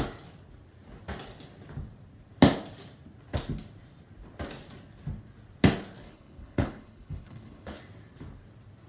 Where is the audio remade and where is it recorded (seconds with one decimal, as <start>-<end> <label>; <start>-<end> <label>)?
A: 0.0-6.0 recorded; 6.0-7.8 remade; 7.8-8.9 recorded